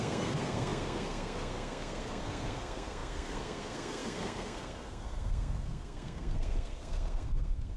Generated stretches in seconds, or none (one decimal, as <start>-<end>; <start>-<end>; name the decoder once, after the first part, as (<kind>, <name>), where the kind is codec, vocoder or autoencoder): 0.0-7.8 (codec, SNAC)